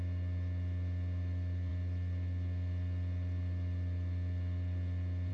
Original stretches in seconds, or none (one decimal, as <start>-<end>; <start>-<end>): 0.0-5.3